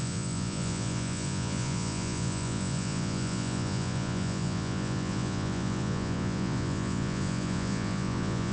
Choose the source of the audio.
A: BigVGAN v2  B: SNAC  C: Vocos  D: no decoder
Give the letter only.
C